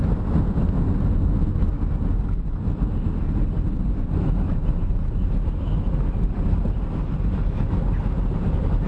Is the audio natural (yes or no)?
yes